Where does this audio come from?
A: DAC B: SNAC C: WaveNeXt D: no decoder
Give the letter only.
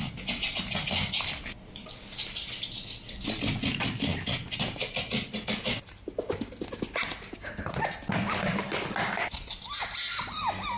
D